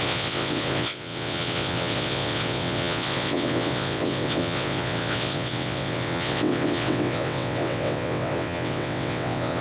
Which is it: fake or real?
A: fake